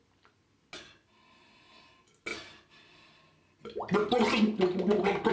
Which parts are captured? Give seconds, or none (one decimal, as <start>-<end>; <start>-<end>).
0.0-5.3